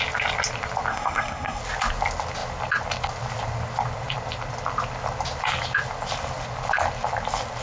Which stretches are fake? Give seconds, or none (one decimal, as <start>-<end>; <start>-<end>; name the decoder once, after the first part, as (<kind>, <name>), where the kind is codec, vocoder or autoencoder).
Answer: 0.9-1.6 (codec, SNAC)